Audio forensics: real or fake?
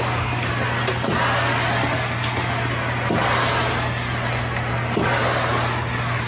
real